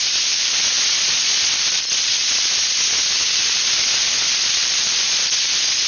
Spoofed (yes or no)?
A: no